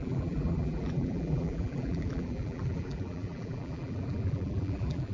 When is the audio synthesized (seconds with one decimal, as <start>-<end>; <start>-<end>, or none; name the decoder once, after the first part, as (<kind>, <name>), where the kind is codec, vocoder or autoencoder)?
0.0-5.1 (vocoder, BigVGAN v2)